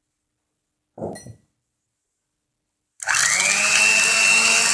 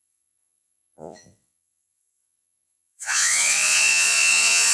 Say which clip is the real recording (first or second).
first